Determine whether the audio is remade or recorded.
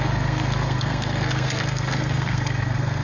remade